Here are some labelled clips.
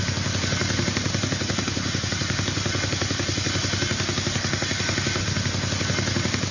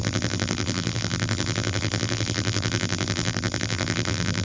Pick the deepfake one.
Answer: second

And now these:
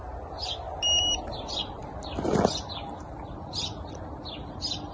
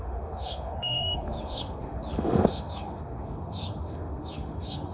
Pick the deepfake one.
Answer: second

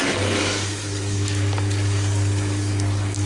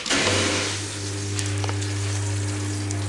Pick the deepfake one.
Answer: first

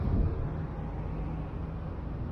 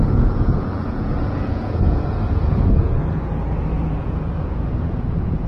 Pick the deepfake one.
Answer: second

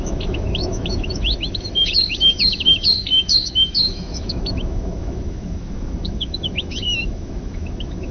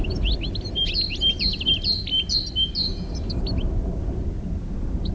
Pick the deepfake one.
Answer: first